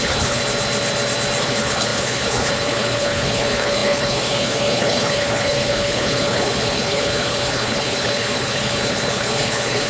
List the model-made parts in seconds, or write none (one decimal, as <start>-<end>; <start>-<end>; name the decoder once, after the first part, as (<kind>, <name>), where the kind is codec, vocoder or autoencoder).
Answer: 0.0-0.4 (codec, HILCodec); 1.4-9.9